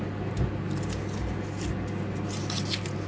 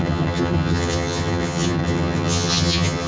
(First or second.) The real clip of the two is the first